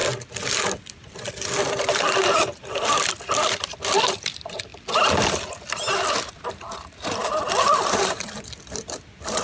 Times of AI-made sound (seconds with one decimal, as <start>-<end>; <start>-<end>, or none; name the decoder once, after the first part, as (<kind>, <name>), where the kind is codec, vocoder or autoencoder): 0.9-4.7 (vocoder, BigVGAN v2); 6.3-9.4